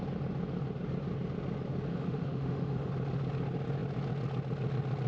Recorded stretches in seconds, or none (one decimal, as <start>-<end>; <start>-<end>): 0.0-1.9; 2.9-5.1